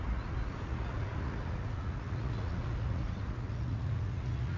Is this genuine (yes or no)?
no